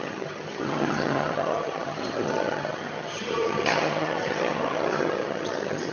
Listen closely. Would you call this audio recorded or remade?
remade